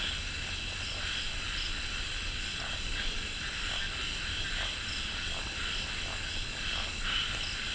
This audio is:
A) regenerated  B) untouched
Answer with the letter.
B